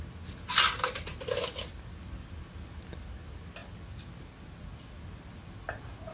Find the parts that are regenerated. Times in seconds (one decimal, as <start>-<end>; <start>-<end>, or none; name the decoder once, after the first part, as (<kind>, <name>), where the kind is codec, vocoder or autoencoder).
none